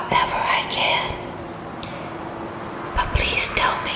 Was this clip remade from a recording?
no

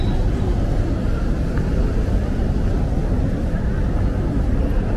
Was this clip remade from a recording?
no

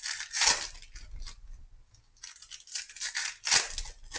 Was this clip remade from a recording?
no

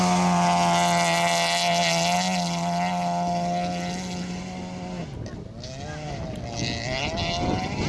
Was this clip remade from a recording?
no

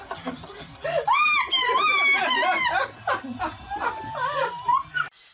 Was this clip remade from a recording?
no